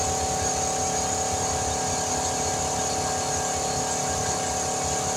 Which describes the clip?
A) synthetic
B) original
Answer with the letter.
B